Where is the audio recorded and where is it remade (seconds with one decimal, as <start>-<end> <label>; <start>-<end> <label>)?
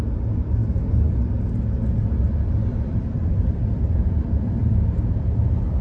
0.0-2.7 recorded; 2.7-4.4 remade; 4.4-5.8 recorded